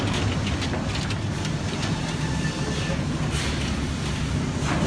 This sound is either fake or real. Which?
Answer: real